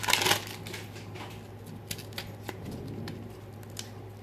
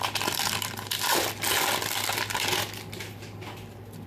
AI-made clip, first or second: second